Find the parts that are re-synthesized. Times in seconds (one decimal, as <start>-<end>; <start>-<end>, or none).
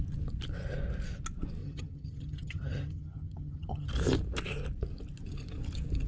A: 1.6-3.9